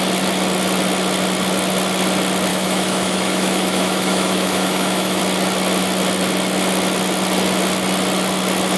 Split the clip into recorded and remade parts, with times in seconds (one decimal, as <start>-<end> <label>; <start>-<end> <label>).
0.0-2.5 recorded; 2.5-5.2 remade; 5.2-8.8 recorded